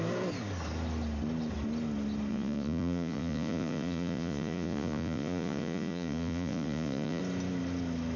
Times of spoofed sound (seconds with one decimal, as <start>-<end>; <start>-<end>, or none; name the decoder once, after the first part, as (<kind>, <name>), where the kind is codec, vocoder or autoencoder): 2.3-7.2 (vocoder, Vocos)